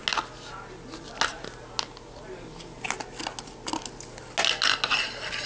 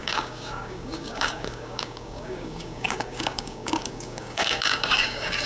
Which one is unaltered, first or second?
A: first